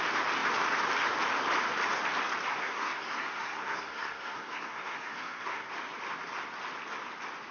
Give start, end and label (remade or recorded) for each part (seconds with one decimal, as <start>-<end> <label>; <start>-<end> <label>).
0.0-2.5 recorded; 2.5-5.7 remade; 5.7-7.5 recorded